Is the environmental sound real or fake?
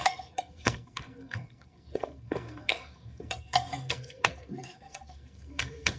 fake